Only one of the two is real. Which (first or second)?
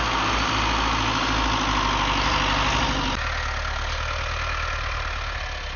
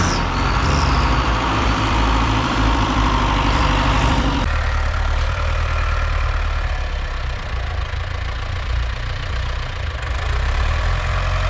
first